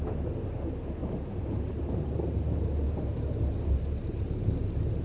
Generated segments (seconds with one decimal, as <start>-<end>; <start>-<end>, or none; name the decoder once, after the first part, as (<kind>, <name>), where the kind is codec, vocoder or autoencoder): none